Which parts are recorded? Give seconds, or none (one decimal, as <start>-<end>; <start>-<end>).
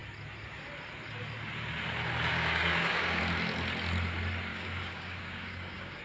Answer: 0.0-2.3; 3.2-4.5